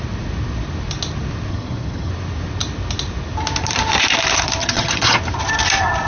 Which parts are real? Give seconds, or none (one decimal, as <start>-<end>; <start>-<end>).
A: 0.0-1.5; 2.1-4.6; 5.2-6.1